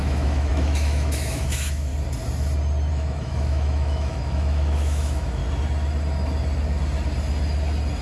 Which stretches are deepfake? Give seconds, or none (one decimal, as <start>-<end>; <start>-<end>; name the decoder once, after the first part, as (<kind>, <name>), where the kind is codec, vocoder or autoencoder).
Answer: 0.0-1.9 (autoencoder, DAC-VAE); 2.9-5.4